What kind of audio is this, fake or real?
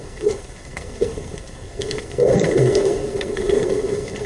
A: fake